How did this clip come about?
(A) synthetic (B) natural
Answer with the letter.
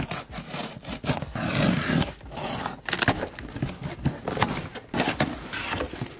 B